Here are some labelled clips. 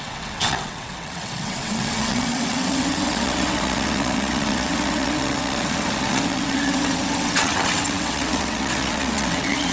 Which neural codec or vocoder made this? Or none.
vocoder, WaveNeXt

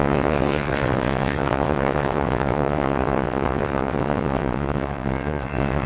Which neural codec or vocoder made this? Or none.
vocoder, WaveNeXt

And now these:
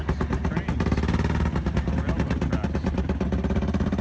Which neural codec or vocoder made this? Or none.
none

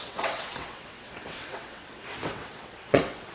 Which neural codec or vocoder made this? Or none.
vocoder, WaveNeXt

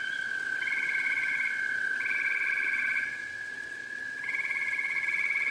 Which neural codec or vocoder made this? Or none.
vocoder, WaveNeXt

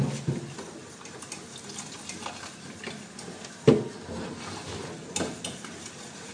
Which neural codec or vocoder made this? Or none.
none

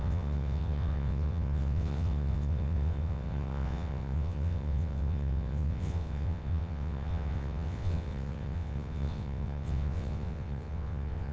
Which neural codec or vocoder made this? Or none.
vocoder, WaveNeXt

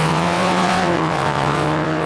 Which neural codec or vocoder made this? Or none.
vocoder, WaveNeXt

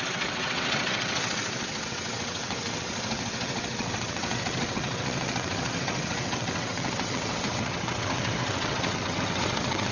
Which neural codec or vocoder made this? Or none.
vocoder, WaveNeXt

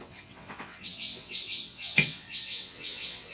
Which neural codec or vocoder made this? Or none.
vocoder, WaveNeXt